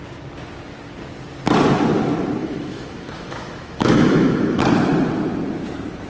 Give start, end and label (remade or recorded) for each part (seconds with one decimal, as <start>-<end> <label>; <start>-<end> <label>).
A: 0.0-2.4 recorded; 2.4-4.6 remade; 4.6-6.1 recorded